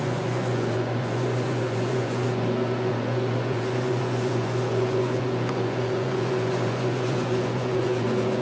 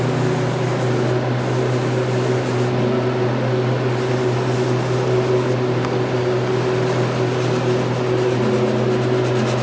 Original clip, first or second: second